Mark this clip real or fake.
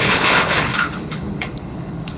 fake